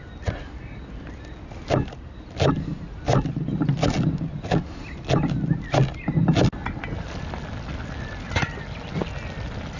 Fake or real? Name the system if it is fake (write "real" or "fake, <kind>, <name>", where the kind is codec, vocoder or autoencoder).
real